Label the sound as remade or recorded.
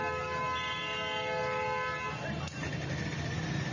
recorded